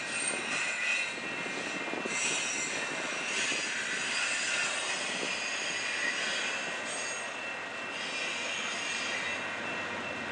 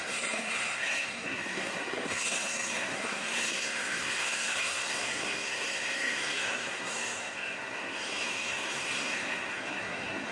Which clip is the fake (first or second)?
second